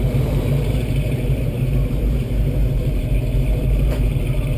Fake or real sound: fake